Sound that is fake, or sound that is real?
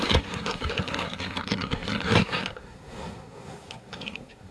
fake